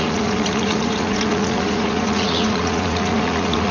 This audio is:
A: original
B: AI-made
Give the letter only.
B